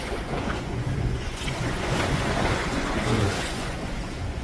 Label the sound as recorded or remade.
remade